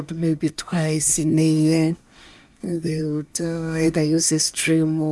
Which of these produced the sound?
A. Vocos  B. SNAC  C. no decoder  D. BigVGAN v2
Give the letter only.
B